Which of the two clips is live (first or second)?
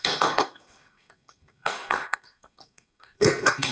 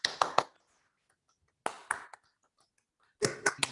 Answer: second